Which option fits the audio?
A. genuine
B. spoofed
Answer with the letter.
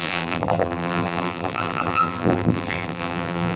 B